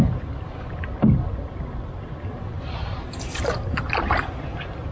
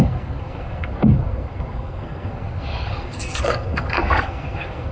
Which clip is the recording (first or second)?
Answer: first